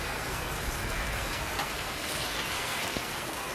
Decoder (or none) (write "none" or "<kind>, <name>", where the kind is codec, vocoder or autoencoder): codec, SNAC